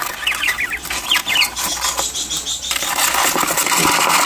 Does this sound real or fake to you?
real